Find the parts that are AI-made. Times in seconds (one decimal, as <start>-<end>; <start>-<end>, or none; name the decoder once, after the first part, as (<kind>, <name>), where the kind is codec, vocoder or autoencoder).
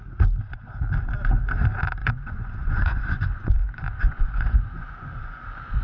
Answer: 2.0-5.8 (vocoder, Vocos)